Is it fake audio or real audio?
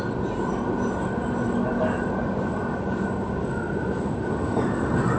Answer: real